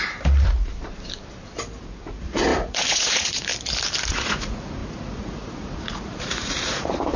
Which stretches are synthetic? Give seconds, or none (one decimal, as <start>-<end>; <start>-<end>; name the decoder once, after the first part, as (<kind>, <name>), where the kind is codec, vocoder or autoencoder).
0.0-0.7 (vocoder, Vocos); 1.8-3.5; 4.1-7.2